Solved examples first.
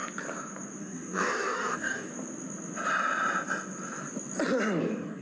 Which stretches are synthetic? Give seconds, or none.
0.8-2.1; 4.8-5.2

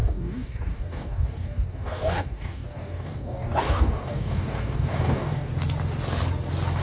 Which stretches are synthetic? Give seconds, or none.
0.0-5.5

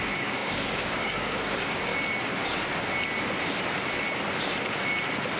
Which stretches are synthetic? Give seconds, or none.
0.0-1.9

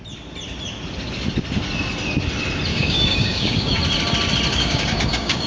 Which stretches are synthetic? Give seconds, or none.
2.7-3.8; 4.5-5.5

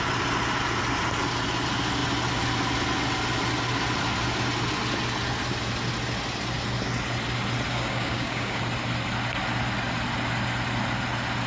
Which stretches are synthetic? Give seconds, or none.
7.7-8.6

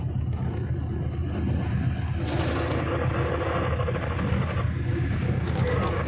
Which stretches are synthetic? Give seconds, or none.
4.9-6.1

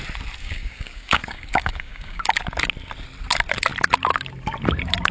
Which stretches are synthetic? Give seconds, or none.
0.4-2.3

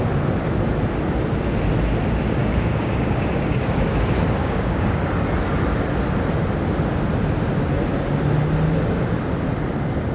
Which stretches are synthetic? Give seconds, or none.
2.4-3.9; 4.4-5.1